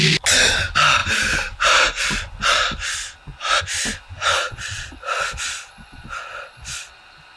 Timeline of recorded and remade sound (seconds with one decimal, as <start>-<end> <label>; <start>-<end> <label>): 0.0-4.3 recorded; 4.3-6.9 remade; 6.9-7.4 recorded